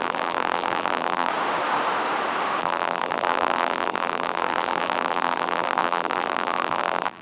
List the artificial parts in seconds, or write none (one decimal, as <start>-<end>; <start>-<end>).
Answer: 0.0-1.3; 2.6-7.2